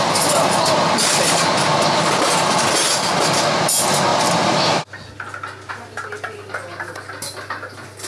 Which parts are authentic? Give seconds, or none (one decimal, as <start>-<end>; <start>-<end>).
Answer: 0.0-8.1